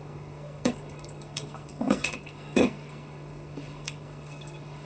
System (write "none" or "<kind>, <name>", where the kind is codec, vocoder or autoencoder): codec, SNAC